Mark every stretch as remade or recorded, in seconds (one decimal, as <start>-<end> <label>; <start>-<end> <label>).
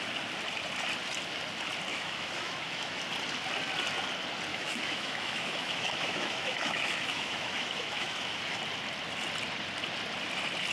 0.0-1.9 recorded; 1.9-3.0 remade; 3.0-4.5 recorded; 4.5-8.4 remade; 8.4-10.7 recorded